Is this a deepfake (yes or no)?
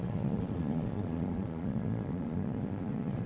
yes